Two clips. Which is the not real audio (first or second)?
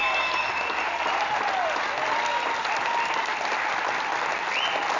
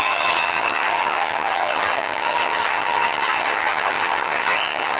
second